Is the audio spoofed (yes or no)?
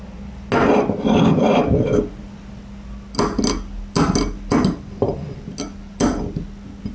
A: no